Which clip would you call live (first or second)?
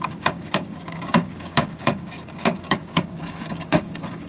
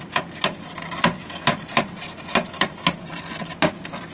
second